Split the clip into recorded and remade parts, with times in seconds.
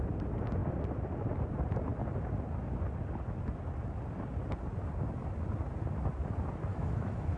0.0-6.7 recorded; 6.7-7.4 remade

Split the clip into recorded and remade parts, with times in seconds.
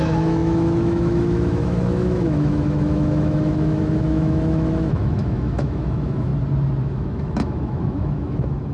0.0-6.3 remade; 6.3-6.8 recorded; 6.8-8.7 remade